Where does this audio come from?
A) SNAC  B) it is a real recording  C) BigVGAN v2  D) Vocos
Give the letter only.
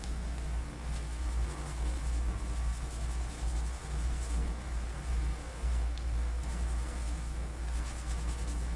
A